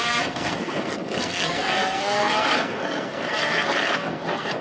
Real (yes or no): no